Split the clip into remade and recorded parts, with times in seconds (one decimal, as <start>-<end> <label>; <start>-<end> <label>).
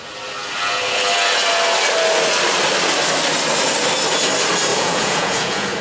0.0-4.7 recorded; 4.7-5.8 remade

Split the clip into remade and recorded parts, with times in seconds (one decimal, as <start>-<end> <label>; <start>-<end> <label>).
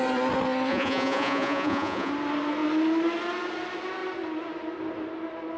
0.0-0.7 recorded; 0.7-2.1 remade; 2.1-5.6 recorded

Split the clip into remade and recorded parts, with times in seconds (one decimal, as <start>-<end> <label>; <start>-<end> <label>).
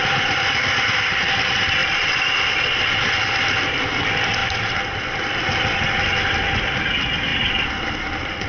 0.0-8.5 recorded